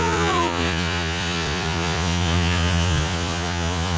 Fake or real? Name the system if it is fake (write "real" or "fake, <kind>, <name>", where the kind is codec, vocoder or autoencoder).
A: fake, vocoder, Vocos